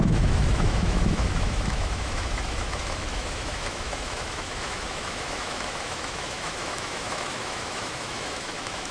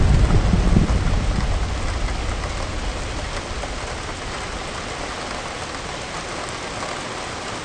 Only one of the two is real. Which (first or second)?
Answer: second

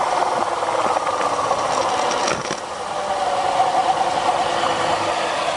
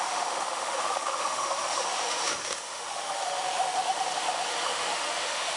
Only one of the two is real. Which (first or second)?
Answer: first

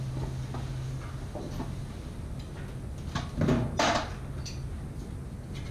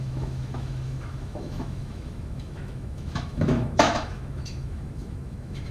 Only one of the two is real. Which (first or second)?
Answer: first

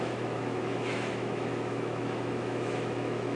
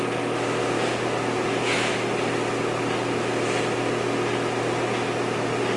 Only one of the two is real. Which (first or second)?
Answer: second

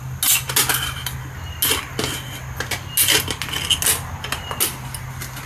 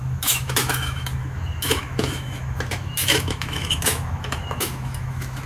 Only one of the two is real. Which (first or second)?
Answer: first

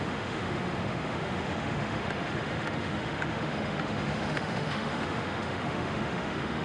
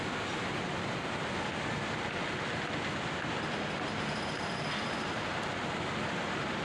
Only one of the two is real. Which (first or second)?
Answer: second